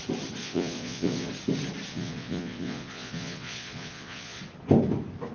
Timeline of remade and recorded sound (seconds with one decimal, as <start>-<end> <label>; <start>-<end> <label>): 0.0-0.4 recorded; 0.4-1.3 remade; 1.3-1.9 recorded; 1.9-4.4 remade; 4.4-5.3 recorded